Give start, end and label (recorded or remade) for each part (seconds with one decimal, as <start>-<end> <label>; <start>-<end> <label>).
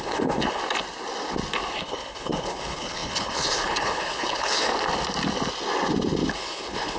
0.0-0.6 remade; 0.6-1.7 recorded; 1.7-4.7 remade; 4.7-6.3 recorded; 6.3-7.0 remade